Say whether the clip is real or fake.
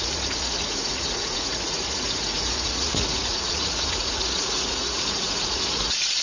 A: fake